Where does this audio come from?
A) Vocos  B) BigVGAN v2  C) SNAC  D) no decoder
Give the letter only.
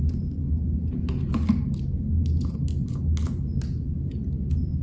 D